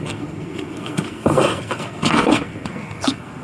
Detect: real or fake fake